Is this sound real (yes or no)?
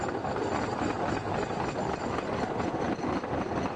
yes